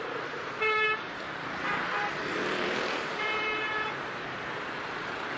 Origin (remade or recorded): remade